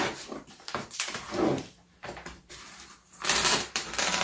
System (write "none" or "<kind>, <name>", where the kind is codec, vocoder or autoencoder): vocoder, BigVGAN v2